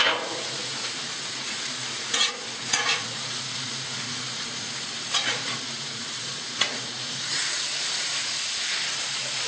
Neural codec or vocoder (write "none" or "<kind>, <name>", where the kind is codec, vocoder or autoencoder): vocoder, Vocos